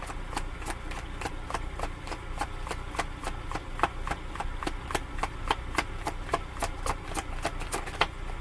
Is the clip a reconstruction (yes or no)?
no